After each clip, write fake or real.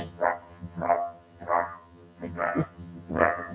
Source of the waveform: fake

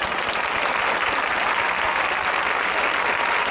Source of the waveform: real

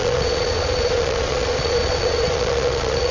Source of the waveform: fake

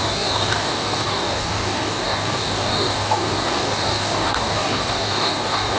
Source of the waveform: fake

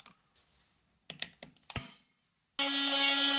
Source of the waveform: real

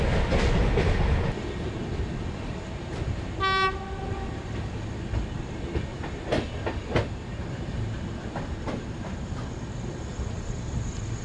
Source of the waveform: real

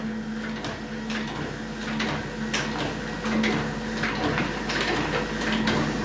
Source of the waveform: real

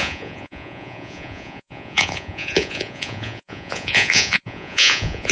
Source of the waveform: fake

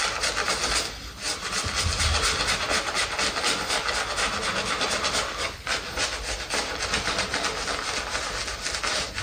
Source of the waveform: real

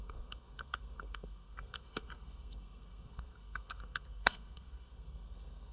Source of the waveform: fake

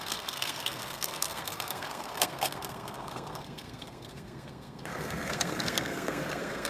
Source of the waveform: fake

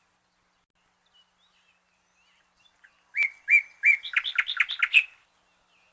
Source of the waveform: real